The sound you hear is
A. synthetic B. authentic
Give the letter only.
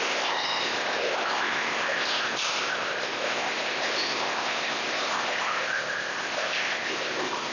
A